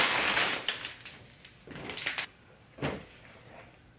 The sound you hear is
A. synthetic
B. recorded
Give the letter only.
B